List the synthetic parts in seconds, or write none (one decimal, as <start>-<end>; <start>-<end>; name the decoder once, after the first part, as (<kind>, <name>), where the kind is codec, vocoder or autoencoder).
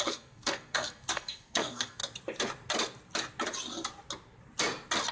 0.0-2.0 (codec, SNAC)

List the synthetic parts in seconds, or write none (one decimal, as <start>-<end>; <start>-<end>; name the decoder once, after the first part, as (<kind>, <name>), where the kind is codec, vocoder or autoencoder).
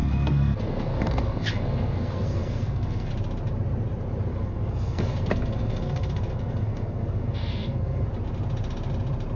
0.0-3.1 (codec, SNAC); 4.3-8.1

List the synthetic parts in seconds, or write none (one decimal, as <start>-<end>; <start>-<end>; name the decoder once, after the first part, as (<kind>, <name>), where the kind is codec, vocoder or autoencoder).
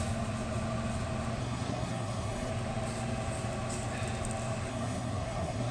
1.4-2.5 (codec, SNAC); 4.7-5.7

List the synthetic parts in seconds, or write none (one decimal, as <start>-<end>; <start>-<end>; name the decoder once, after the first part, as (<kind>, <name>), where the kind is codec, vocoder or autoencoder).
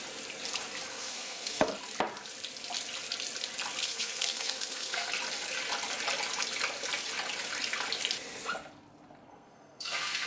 0.9-1.7 (codec, SNAC); 3.8-5.1; 9.3-10.3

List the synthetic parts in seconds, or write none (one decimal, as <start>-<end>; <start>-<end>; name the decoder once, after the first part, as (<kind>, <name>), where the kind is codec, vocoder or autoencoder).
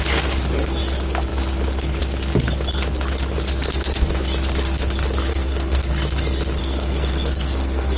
5.3-5.9 (codec, SNAC); 6.6-8.0